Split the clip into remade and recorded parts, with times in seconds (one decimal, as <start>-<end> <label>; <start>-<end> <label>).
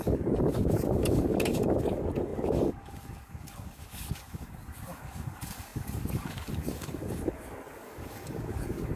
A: 0.0-9.0 remade